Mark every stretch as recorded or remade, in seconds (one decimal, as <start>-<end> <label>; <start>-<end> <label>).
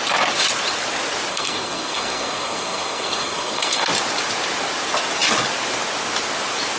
0.0-1.3 recorded; 1.3-3.9 remade; 3.9-6.8 recorded